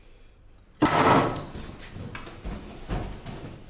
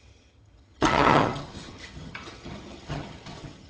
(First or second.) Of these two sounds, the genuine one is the first